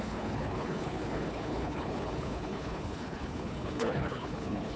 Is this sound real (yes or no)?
no